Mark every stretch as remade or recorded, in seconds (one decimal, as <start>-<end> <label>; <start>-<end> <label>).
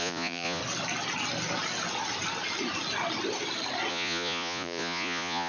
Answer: 0.0-0.6 remade; 0.6-3.9 recorded; 3.9-5.5 remade